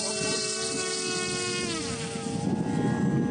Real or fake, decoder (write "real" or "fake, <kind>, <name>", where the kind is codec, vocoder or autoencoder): real